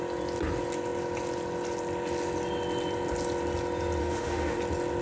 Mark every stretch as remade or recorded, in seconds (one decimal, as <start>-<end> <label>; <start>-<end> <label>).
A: 0.0-4.0 recorded; 4.0-4.6 remade; 4.6-5.0 recorded